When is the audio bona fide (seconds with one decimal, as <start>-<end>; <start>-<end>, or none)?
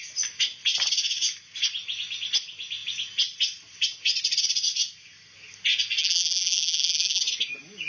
0.0-6.0; 7.2-7.9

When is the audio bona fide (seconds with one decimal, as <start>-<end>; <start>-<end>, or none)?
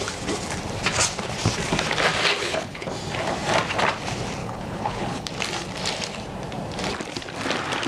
0.0-2.4; 2.9-4.4; 5.3-7.9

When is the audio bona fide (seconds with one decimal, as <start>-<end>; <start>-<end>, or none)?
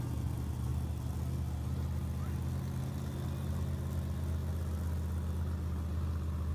0.0-6.5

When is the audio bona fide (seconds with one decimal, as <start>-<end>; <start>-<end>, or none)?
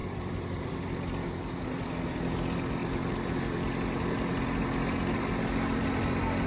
1.9-2.8; 3.4-6.5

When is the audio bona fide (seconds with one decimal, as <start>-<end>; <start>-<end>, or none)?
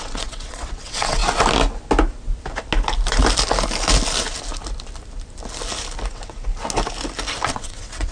1.2-6.1; 6.5-7.5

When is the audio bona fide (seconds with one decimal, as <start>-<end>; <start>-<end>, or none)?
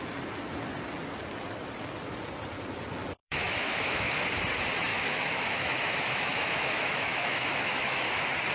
0.0-3.2; 4.1-4.9; 8.1-8.5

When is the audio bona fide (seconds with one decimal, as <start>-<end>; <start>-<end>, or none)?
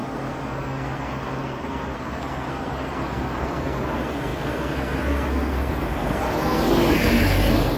none